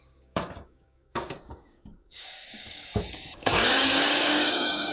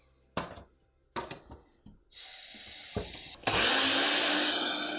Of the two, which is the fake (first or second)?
first